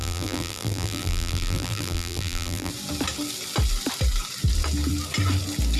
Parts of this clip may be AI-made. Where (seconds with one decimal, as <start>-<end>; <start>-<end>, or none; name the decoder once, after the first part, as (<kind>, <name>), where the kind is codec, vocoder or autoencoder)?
0.0-2.7 (vocoder, BigVGAN v2)